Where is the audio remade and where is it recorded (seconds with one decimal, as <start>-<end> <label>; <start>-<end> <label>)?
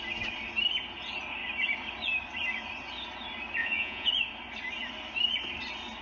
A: 0.0-3.6 recorded; 3.6-4.1 remade; 4.1-6.0 recorded